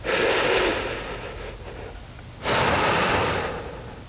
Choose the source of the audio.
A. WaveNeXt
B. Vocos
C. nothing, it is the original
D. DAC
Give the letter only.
C